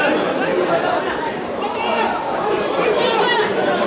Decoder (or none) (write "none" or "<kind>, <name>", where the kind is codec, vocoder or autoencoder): vocoder, BigVGAN v2